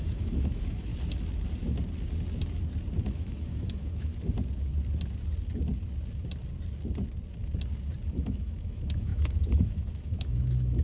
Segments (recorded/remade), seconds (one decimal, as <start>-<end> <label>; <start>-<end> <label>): 0.0-0.9 remade; 0.9-3.0 recorded; 3.0-4.1 remade; 4.1-8.1 recorded; 8.1-10.8 remade